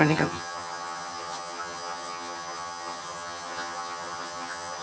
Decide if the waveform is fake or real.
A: fake